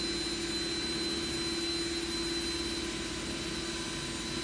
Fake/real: real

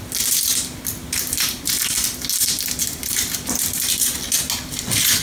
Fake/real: real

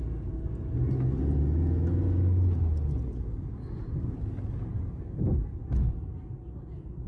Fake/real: real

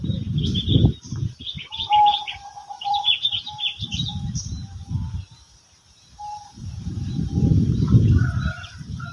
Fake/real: fake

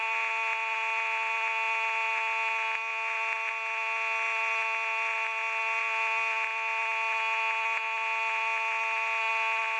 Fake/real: real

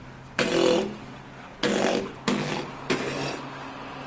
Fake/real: real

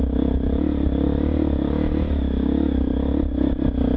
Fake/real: real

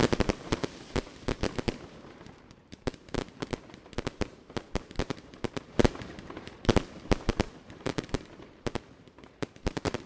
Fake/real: fake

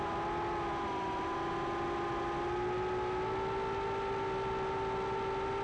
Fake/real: real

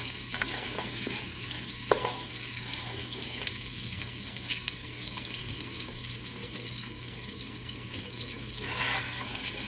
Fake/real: fake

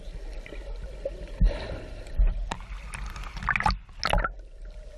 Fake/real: real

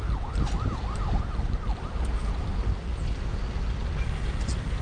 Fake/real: real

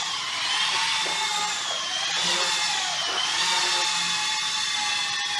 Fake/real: real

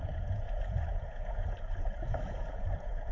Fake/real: fake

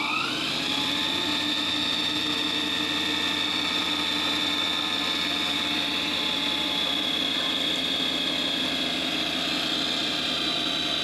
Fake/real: real